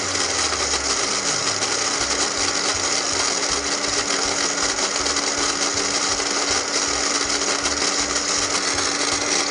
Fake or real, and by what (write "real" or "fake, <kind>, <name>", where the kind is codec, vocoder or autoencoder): real